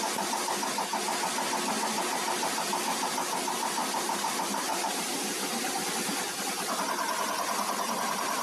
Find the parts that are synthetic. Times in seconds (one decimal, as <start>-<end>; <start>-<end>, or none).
3.8-5.5